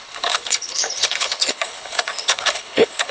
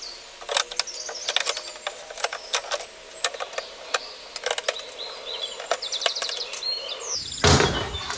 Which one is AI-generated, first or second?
first